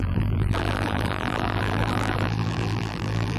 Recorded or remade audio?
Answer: remade